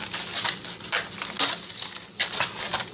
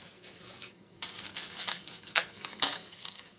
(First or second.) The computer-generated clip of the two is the second